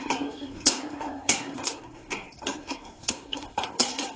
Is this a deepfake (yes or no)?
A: yes